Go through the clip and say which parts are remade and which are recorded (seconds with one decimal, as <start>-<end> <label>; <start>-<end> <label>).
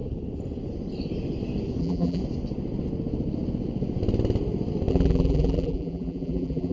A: 0.0-1.8 recorded; 1.8-2.2 remade; 2.2-4.9 recorded; 4.9-6.7 remade